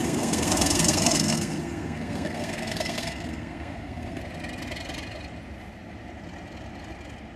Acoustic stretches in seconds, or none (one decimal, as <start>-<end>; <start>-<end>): 4.2-7.4